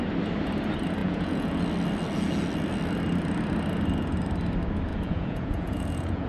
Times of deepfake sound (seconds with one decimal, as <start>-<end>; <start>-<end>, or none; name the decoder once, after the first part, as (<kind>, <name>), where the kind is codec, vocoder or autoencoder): 1.0-1.6 (vocoder, Vocos); 4.9-6.3